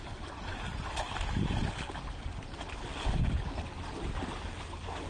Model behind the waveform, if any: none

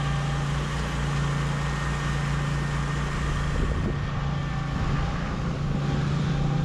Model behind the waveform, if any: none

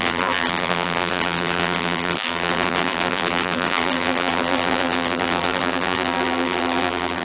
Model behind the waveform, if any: vocoder, BigVGAN v2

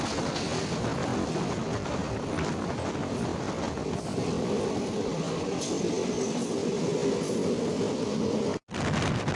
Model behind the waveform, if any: none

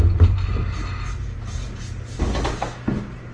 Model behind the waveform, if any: vocoder, BigVGAN v2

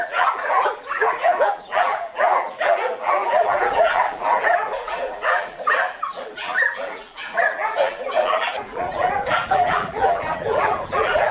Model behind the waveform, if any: vocoder, BigVGAN v2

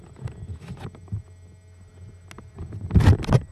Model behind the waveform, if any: none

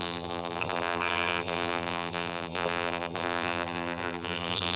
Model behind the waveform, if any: vocoder, BigVGAN v2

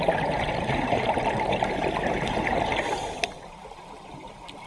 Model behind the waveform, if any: none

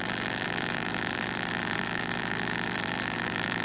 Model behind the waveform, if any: vocoder, BigVGAN v2